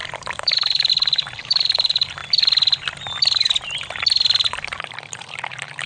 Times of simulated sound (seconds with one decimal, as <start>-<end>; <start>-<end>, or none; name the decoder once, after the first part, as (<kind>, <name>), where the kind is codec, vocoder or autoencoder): 0.0-2.2 (vocoder, BigVGAN v2); 4.6-5.9